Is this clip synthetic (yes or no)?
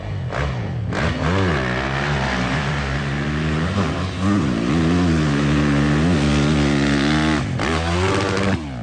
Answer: no